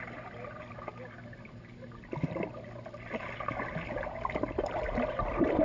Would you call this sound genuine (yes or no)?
yes